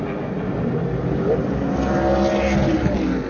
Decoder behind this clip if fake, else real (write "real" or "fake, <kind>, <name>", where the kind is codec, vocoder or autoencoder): real